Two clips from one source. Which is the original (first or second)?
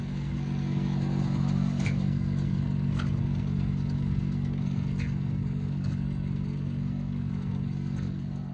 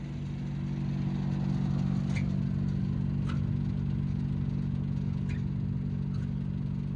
second